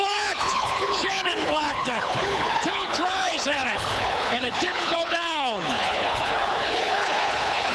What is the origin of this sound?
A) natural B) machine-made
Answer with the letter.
B